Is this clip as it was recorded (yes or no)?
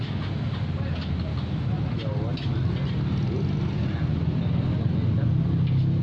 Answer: yes